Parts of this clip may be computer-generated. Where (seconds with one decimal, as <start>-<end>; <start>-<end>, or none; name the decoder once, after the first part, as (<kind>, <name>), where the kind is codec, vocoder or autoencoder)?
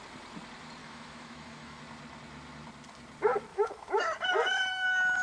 0.8-1.8 (autoencoder, DAC-VAE); 3.5-4.0